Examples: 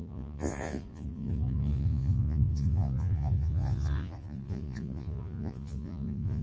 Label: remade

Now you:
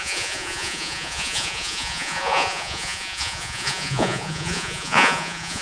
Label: remade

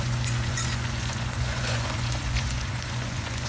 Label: remade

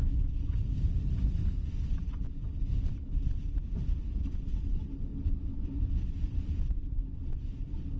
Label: recorded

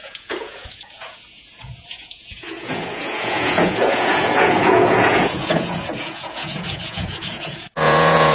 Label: remade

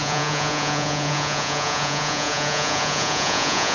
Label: remade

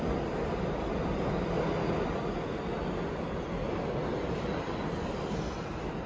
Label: recorded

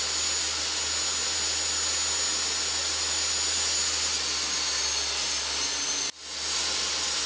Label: recorded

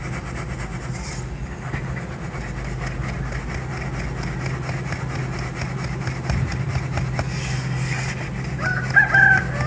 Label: recorded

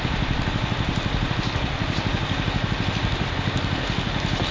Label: recorded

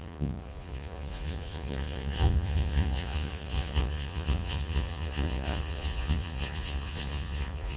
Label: remade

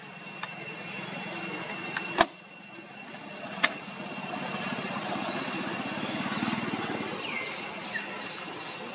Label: recorded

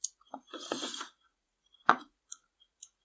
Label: remade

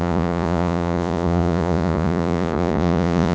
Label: remade